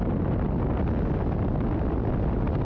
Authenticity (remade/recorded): recorded